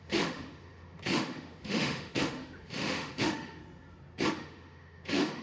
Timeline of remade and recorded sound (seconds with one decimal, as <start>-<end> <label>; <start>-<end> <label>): 0.0-3.6 remade; 3.6-4.3 recorded; 4.3-5.4 remade